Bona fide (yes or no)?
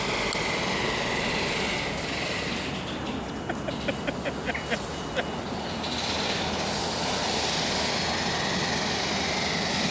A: yes